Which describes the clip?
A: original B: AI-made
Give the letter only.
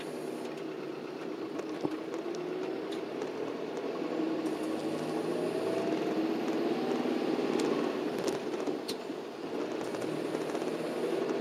A